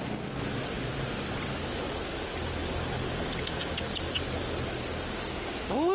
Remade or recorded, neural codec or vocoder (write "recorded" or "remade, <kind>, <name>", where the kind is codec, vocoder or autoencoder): recorded